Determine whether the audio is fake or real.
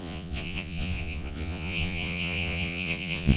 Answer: fake